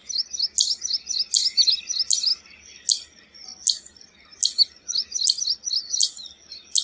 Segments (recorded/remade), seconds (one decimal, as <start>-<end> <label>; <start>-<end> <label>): 0.0-6.8 recorded